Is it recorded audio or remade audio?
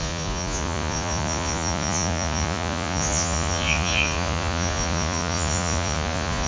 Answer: remade